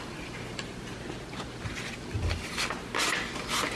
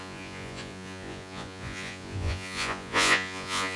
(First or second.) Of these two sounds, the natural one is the first